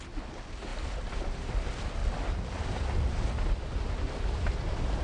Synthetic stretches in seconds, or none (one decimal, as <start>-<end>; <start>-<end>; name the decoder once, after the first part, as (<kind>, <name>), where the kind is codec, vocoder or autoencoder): none